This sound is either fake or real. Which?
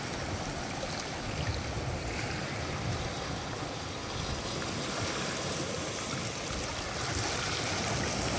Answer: real